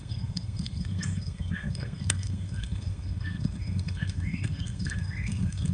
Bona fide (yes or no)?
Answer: no